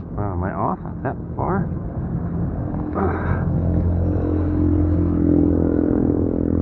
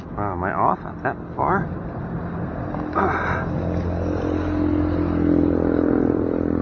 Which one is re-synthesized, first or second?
first